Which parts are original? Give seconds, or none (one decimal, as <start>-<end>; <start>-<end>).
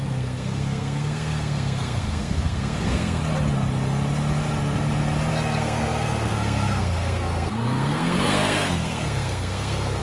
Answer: 3.2-5.3